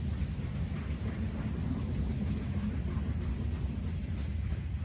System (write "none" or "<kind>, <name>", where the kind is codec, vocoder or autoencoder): none